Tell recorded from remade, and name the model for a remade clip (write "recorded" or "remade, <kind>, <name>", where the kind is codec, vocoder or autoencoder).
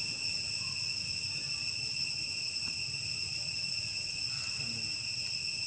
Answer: recorded